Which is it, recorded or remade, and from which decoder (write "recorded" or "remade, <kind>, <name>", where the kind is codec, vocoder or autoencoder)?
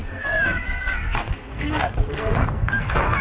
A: remade, codec, SNAC